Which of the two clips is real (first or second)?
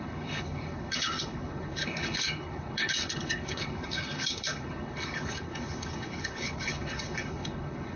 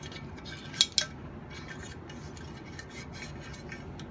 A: second